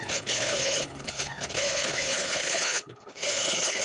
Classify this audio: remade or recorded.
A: remade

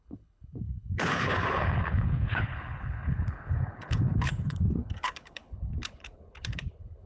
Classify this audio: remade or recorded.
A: remade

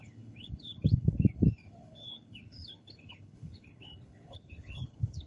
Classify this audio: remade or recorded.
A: remade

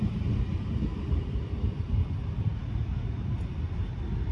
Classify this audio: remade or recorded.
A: recorded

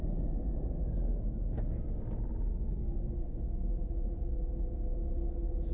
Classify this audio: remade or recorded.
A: recorded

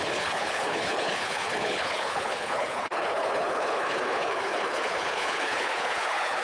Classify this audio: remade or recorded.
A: remade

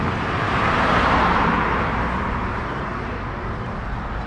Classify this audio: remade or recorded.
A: recorded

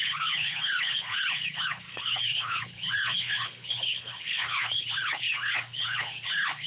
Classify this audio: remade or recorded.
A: remade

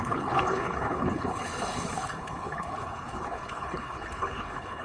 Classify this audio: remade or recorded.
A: remade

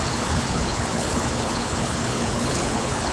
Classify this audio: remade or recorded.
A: remade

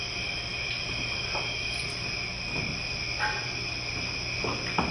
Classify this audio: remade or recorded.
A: recorded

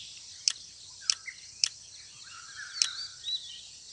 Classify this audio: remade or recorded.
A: recorded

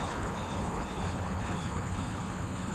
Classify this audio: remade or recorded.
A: remade